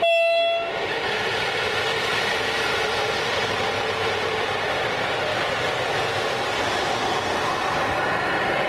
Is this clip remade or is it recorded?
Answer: recorded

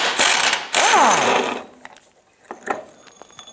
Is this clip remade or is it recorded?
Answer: recorded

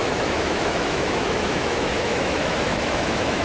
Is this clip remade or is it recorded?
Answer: remade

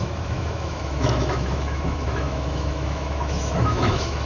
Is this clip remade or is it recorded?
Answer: remade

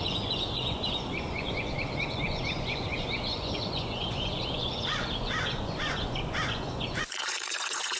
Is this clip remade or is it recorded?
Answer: remade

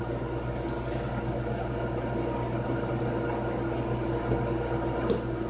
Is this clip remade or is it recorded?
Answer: recorded